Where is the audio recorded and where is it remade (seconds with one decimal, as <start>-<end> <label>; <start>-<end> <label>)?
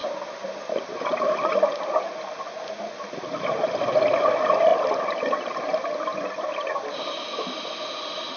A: 0.0-8.4 recorded